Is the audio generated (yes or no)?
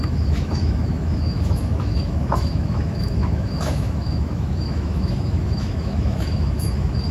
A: yes